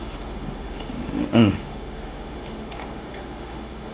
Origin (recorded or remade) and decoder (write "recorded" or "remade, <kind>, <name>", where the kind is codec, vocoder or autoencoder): remade, autoencoder, DAC-VAE